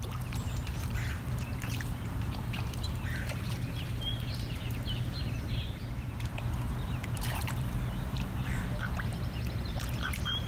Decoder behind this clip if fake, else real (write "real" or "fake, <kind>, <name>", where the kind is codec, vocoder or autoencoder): fake, vocoder, BigVGAN v2